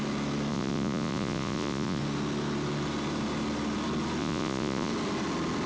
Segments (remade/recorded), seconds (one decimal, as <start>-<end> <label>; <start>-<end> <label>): 0.0-0.5 recorded; 0.5-2.0 remade; 2.0-4.2 recorded; 4.2-4.9 remade; 4.9-5.7 recorded